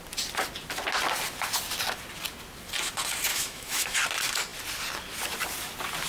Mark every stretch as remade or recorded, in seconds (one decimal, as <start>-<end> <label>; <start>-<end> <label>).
0.0-3.3 recorded; 3.3-4.0 remade; 4.0-6.1 recorded